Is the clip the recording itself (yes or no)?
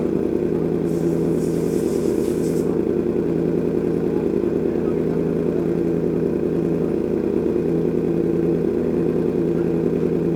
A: yes